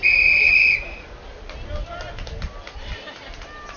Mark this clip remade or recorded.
recorded